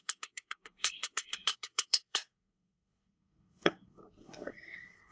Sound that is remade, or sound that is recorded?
remade